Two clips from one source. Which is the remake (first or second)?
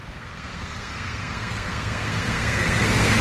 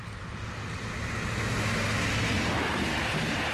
first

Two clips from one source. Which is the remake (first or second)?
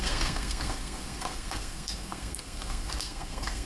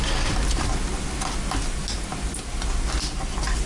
first